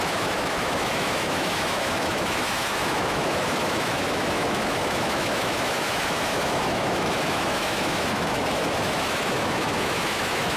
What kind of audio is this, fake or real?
fake